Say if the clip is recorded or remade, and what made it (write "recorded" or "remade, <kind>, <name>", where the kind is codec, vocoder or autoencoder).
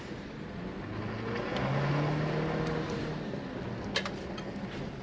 recorded